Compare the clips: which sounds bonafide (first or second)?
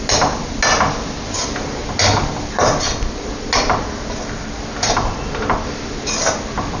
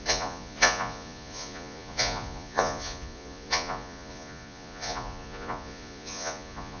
first